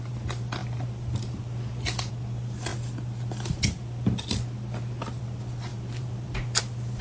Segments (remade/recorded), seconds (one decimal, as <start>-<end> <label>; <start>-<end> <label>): 0.0-5.7 recorded; 5.7-6.6 remade; 6.6-7.0 recorded

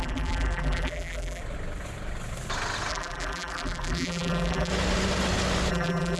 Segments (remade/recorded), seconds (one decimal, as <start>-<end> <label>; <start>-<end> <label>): 0.0-1.4 remade; 1.4-2.9 recorded; 2.9-4.7 remade; 4.7-5.7 recorded; 5.7-6.2 remade

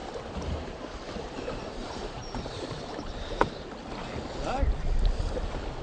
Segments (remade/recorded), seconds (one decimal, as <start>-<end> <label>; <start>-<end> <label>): 0.0-3.5 remade; 3.5-5.8 recorded

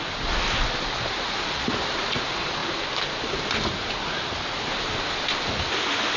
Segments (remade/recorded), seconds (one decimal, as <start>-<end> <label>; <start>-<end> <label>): 0.0-6.2 recorded

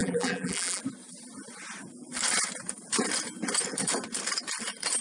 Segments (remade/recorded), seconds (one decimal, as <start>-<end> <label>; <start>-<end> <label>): 0.0-0.8 remade; 0.8-5.0 recorded

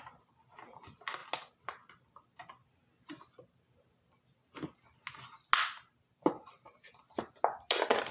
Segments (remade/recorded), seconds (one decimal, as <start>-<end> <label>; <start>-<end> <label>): 0.0-1.2 remade; 1.2-1.9 recorded; 1.9-2.4 remade; 2.4-7.1 recorded; 7.1-8.1 remade